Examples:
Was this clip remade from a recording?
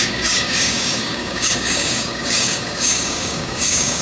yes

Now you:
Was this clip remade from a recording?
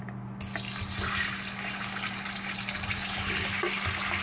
no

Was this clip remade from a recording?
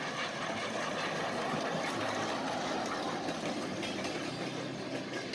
no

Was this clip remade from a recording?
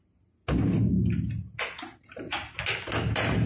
no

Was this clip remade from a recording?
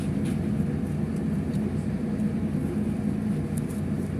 no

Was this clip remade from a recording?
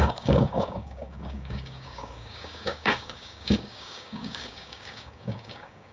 yes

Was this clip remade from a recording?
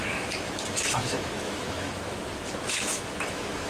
yes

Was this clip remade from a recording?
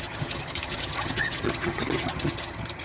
yes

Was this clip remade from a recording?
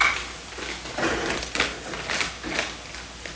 no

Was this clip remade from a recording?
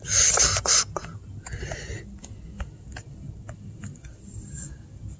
no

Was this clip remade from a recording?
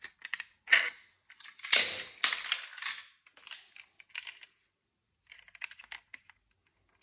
no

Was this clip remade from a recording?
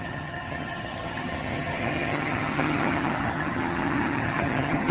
yes